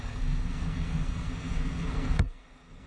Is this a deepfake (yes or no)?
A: yes